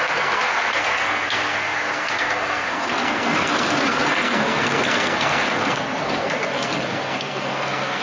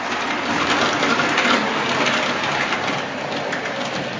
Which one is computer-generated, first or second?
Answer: first